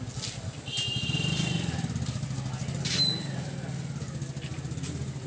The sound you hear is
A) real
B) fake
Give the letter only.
A